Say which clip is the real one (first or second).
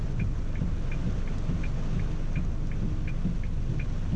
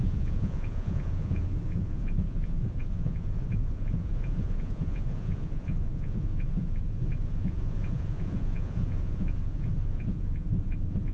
first